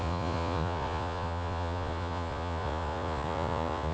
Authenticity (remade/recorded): remade